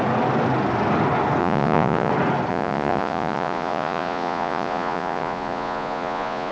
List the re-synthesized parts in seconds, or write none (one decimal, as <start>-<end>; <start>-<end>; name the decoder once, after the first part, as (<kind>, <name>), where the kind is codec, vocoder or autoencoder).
1.4-2.1 (vocoder, Vocos); 2.5-6.5